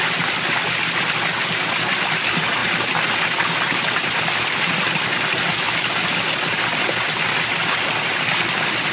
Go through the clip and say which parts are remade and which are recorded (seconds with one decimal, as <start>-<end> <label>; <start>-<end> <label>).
0.0-8.9 recorded